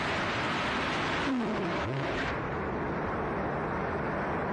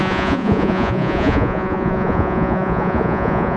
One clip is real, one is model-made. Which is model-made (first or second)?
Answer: second